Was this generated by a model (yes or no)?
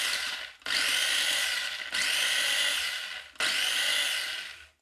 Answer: no